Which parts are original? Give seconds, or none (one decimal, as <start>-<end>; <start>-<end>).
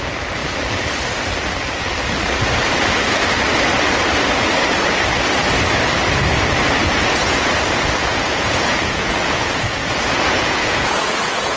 0.0-6.8; 7.5-8.1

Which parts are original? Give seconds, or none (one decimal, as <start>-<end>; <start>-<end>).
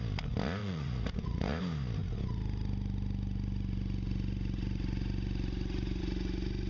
0.0-0.6; 1.6-6.7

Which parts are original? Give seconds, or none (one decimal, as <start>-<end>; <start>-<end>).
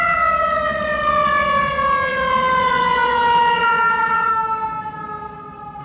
4.3-5.8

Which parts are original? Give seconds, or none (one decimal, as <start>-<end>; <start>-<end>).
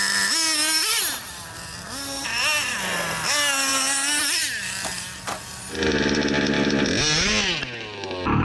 0.0-8.4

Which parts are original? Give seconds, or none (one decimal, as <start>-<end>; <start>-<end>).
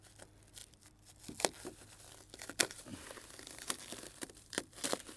0.0-0.6; 1.1-2.9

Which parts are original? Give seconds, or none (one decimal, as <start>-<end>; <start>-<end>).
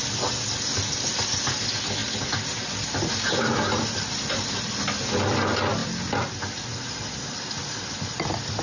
0.0-8.6